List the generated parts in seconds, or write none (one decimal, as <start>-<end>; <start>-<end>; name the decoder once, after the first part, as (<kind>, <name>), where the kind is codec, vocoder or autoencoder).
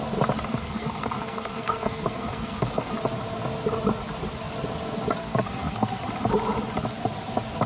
0.5-2.9 (codec, SNAC); 5.2-6.0